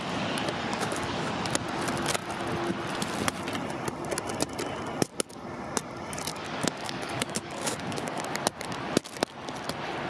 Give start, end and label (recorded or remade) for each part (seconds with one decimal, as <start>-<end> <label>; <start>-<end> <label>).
0.0-0.7 recorded; 0.7-1.3 remade; 1.3-6.3 recorded; 6.3-8.2 remade; 8.2-10.1 recorded

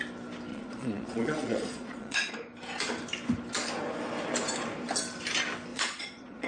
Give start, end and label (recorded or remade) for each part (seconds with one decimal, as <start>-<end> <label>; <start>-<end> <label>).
0.0-0.5 recorded; 0.5-2.3 remade; 2.3-5.7 recorded; 5.7-6.5 remade

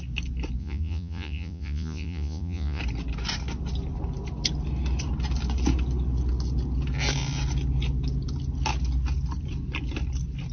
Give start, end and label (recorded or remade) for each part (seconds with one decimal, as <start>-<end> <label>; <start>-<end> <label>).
0.0-0.6 recorded; 0.6-2.8 remade; 2.8-10.5 recorded

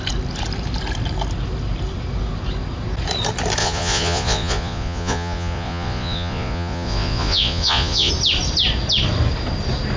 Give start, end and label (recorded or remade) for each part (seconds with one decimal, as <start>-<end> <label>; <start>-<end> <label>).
0.0-3.6 recorded; 3.6-8.1 remade; 8.1-10.0 recorded

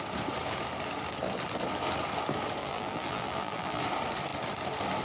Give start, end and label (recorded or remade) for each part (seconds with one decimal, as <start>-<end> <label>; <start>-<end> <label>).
0.0-2.6 recorded; 2.6-3.8 remade; 3.8-5.0 recorded

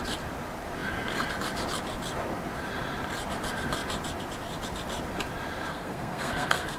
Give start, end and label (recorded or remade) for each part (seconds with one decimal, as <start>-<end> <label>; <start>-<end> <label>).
0.0-5.7 recorded; 5.7-6.8 remade

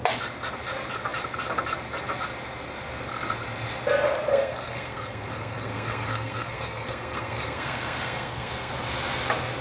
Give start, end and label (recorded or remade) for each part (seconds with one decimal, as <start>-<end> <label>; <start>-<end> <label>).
0.0-4.3 recorded; 4.3-8.7 remade; 8.7-9.6 recorded

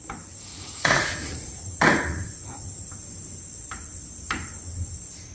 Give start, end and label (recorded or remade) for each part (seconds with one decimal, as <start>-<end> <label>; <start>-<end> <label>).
0.0-0.5 recorded; 0.5-2.9 remade; 2.9-5.3 recorded